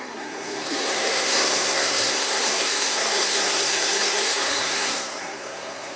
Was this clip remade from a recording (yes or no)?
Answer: yes